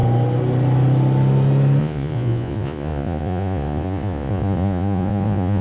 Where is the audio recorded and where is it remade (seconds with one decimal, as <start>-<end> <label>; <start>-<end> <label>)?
0.0-1.8 recorded; 1.8-5.6 remade

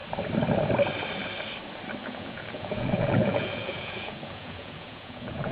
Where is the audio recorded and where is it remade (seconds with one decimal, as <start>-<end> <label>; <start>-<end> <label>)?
0.0-2.0 recorded; 2.0-5.5 remade

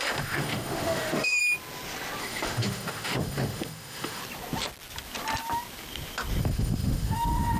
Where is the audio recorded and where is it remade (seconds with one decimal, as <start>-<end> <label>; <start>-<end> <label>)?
0.0-1.4 remade; 1.4-2.2 recorded; 2.2-4.2 remade; 4.2-6.4 recorded; 6.4-7.6 remade

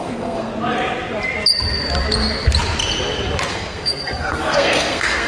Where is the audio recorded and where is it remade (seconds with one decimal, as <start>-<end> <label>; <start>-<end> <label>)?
0.0-0.5 remade; 0.5-3.5 recorded; 3.5-5.3 remade

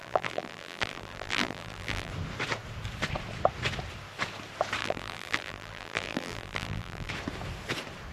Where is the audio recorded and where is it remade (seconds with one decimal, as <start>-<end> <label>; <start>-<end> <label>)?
0.0-2.1 remade; 2.1-4.8 recorded; 4.8-7.1 remade; 7.1-8.1 recorded

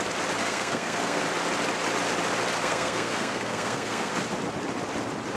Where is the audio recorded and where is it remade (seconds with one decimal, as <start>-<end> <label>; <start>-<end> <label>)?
0.0-0.4 recorded; 0.4-1.2 remade; 1.2-2.6 recorded; 2.6-4.1 remade; 4.1-5.4 recorded

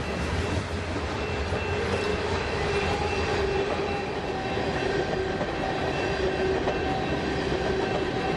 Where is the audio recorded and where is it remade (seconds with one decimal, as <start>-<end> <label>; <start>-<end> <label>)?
0.0-2.1 recorded; 2.1-2.6 remade; 2.6-8.4 recorded